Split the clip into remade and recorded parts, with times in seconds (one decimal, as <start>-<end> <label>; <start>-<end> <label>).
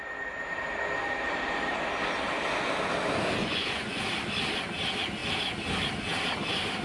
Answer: 0.0-3.4 recorded; 3.4-4.0 remade; 4.0-6.8 recorded